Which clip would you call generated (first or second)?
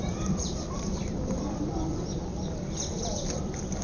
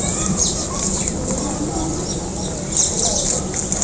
first